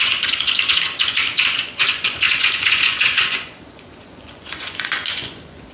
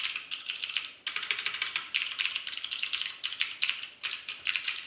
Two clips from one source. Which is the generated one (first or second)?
first